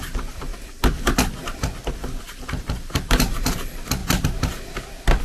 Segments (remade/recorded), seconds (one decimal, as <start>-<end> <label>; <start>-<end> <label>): 0.0-0.5 remade; 0.5-2.4 recorded; 2.4-4.0 remade; 4.0-5.2 recorded